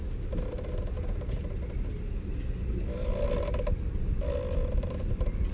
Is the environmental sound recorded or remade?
recorded